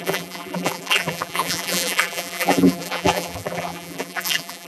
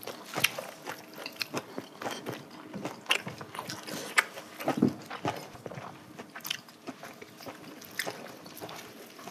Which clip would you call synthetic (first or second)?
first